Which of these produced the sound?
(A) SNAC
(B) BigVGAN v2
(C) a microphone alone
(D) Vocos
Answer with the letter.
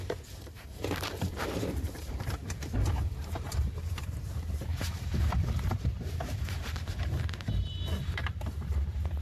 B